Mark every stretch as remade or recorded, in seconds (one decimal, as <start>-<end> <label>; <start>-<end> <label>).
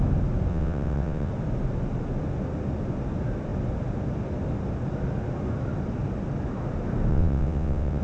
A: 0.0-0.5 recorded; 0.5-1.3 remade; 1.3-7.1 recorded; 7.1-8.0 remade